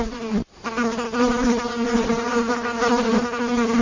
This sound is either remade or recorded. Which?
recorded